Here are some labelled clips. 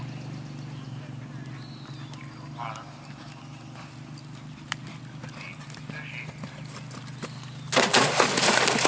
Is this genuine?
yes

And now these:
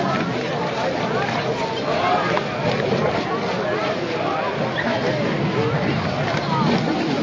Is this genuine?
yes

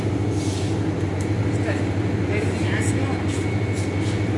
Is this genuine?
yes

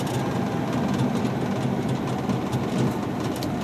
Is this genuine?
yes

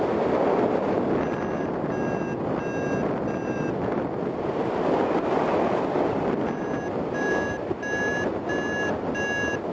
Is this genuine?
yes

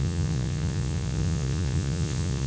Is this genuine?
no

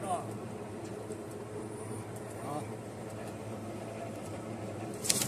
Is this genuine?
no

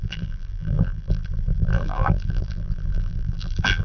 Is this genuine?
no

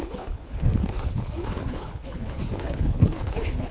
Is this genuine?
no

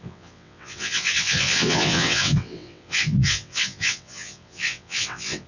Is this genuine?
no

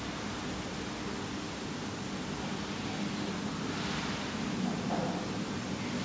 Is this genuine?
yes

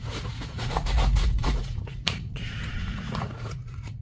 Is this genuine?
no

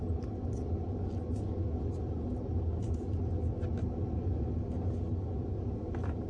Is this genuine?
yes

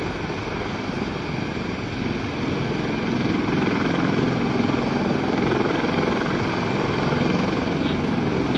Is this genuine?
yes